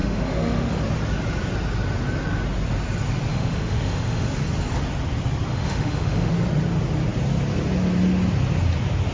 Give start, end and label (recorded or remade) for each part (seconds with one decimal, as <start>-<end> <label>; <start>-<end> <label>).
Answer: 0.0-0.8 remade; 0.8-3.3 recorded; 3.3-4.4 remade; 4.4-5.5 recorded; 5.5-6.3 remade; 6.3-9.1 recorded